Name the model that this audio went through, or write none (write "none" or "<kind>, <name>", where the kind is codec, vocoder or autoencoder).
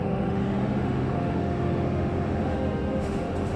autoencoder, DAC-VAE